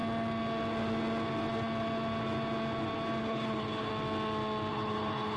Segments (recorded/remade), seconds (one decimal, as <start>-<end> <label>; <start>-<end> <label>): 0.0-3.2 recorded; 3.2-3.9 remade; 3.9-4.7 recorded; 4.7-5.4 remade

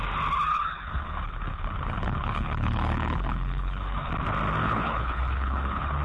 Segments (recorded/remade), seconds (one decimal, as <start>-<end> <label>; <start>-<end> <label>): 0.0-0.5 recorded; 0.5-4.1 remade; 4.1-4.6 recorded; 4.6-6.0 remade

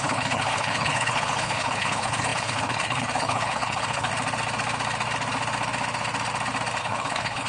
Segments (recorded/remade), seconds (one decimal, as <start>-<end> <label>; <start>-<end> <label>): 0.0-4.1 remade; 4.1-6.8 recorded; 6.8-7.5 remade

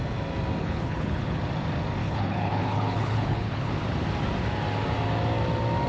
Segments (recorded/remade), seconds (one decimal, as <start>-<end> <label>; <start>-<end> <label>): 0.0-0.6 recorded; 0.6-1.4 remade; 1.4-2.0 recorded; 2.0-3.7 remade; 3.7-5.9 recorded

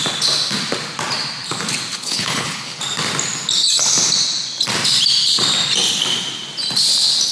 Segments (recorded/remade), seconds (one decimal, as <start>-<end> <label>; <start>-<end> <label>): 0.0-1.9 recorded; 1.9-2.8 remade; 2.8-7.3 recorded